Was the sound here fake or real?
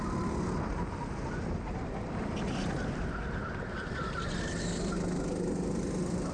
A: real